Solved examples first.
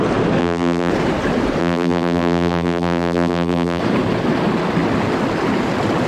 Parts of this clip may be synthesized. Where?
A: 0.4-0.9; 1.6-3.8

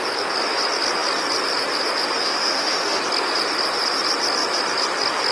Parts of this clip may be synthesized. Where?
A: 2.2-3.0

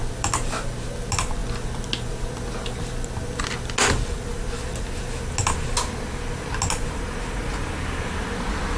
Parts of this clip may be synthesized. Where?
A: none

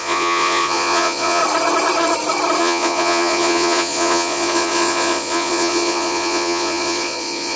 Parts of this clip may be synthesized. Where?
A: 0.0-1.4; 2.6-7.6

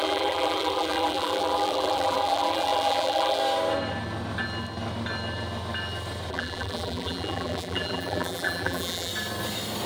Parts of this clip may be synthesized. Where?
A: 0.0-3.4; 6.3-9.1